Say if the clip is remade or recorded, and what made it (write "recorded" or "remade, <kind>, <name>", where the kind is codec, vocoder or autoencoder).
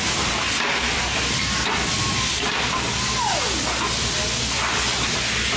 recorded